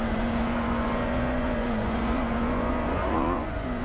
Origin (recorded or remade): remade